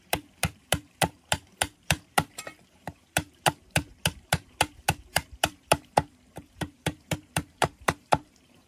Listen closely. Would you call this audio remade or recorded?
remade